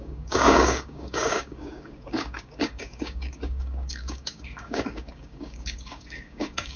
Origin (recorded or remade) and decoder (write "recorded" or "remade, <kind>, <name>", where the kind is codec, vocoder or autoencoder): remade, codec, DAC